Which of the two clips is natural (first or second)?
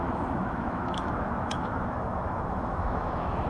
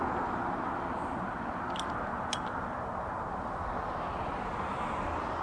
second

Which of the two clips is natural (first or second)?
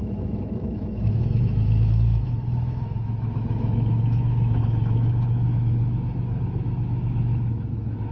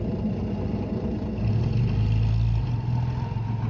second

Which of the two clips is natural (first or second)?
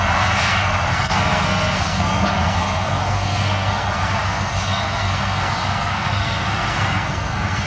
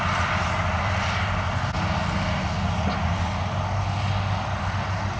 second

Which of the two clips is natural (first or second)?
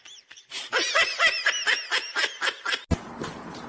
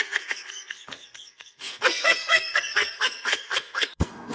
first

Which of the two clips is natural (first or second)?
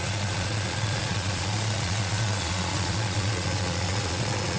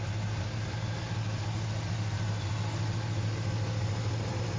second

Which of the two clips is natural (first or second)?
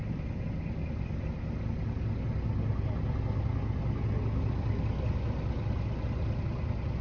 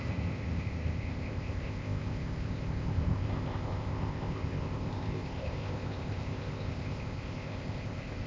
first